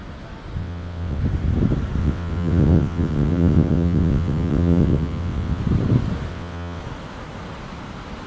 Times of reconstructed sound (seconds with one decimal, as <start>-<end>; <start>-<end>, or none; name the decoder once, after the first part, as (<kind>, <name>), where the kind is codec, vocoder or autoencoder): 0.6-1.2 (vocoder, WaveNeXt); 2.0-5.6; 6.3-6.8